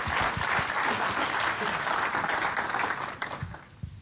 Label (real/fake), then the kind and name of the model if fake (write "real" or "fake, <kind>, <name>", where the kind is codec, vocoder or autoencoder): real